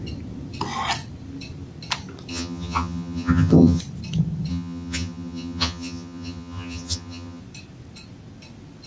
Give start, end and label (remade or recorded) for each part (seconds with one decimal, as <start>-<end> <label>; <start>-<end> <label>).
0.0-2.3 recorded; 2.3-3.8 remade; 3.8-4.5 recorded; 4.5-7.4 remade; 7.4-8.9 recorded